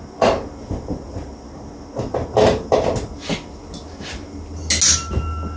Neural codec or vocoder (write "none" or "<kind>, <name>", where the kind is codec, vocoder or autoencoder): none